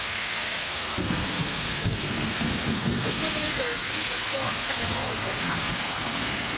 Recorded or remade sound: remade